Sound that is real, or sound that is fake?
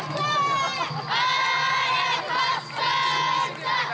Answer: real